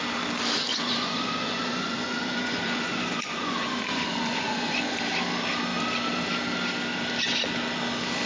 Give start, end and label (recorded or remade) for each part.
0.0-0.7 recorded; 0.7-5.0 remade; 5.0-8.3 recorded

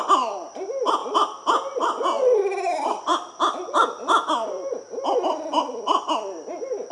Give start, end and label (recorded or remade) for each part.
0.0-6.9 recorded

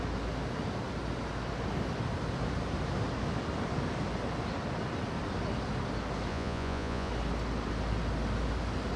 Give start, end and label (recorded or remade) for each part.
0.0-6.3 recorded; 6.3-7.1 remade; 7.1-9.0 recorded

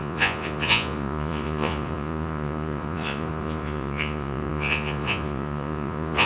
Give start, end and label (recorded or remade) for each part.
0.0-6.3 remade